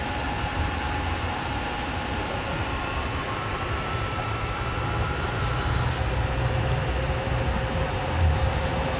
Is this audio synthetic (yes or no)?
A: yes